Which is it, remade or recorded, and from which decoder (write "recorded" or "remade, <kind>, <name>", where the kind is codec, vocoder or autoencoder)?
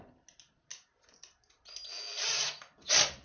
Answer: recorded